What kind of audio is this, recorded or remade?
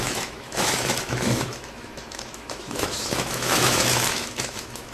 remade